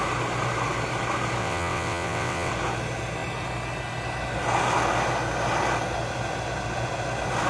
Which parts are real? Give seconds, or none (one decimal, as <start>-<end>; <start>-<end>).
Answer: 0.0-1.4; 2.5-7.5